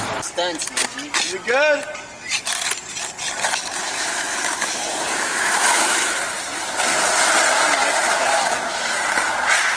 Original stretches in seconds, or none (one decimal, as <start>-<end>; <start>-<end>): 0.0-3.8; 6.2-9.8